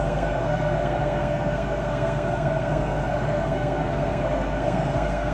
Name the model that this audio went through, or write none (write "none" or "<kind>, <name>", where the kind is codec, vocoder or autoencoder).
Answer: codec, SNAC